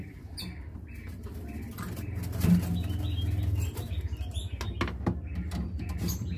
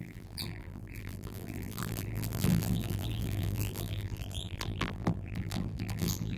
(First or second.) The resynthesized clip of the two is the second